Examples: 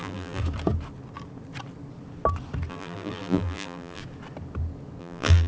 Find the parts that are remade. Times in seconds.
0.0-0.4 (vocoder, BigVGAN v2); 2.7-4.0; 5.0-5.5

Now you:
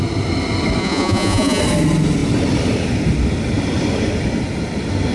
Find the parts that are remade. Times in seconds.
0.8-1.6 (vocoder, Vocos)

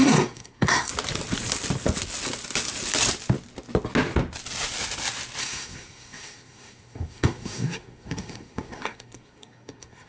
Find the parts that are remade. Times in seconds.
0.0-0.9 (codec, SNAC); 5.4-10.1

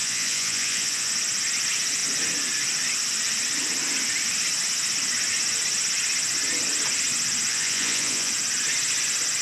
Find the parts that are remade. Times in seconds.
0.0-1.1 (vocoder, Vocos); 7.5-8.3

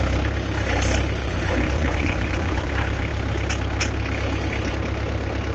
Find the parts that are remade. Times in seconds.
1.2-2.7 (vocoder, Vocos)